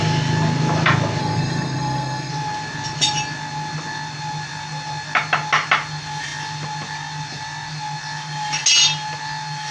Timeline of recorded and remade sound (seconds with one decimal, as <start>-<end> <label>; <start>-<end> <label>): 0.0-1.2 recorded; 1.2-2.3 remade; 2.3-9.7 recorded